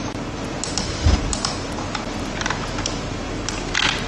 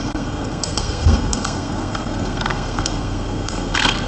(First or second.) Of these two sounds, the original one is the first